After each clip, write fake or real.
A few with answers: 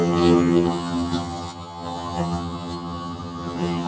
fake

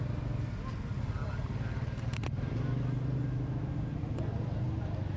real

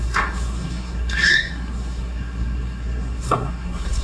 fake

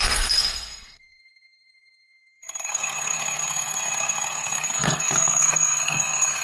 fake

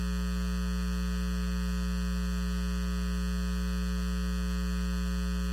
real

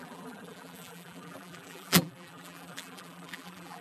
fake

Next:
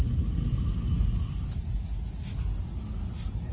real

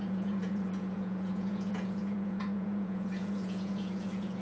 fake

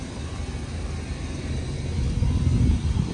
real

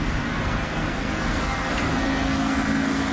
fake